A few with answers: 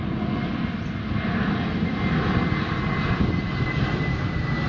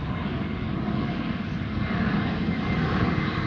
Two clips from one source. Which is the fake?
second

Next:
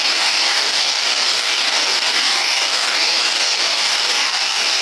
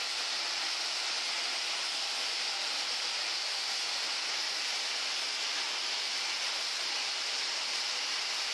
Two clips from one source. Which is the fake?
first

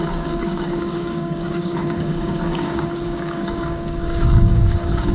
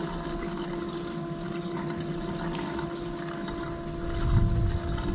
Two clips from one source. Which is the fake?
first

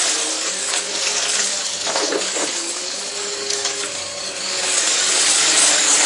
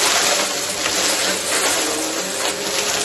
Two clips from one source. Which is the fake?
first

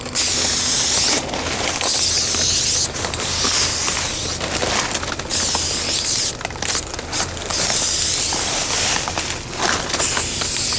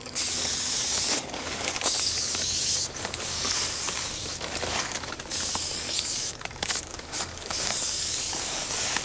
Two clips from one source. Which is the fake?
second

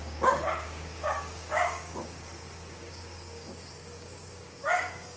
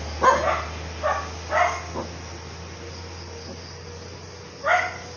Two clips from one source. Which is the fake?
first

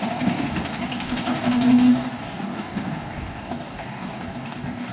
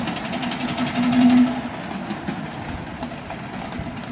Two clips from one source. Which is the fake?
first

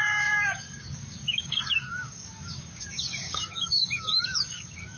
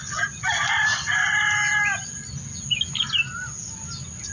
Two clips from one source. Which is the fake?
first